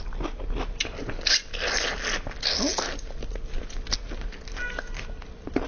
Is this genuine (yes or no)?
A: yes